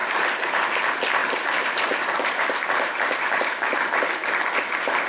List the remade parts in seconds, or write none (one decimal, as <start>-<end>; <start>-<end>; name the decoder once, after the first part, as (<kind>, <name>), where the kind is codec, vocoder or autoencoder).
0.0-0.6 (vocoder, BigVGAN v2); 1.2-4.3